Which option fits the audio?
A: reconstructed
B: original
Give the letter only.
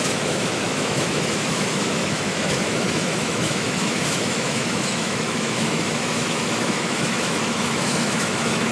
A